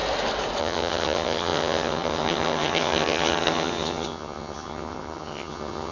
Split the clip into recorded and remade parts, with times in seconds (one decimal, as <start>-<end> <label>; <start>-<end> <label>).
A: 0.0-0.6 recorded; 0.6-5.9 remade